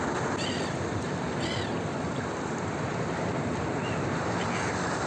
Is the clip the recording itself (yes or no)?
no